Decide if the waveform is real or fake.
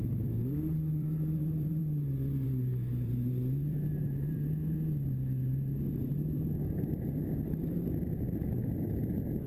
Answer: fake